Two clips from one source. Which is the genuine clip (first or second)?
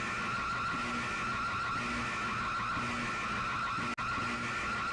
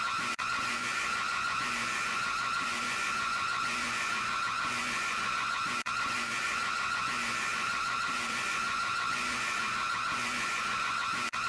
first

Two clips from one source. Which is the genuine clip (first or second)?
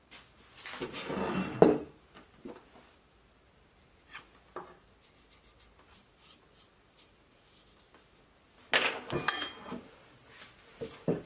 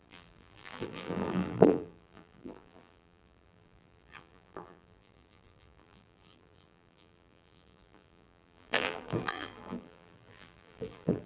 first